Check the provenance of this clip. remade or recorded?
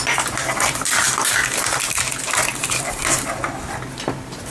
recorded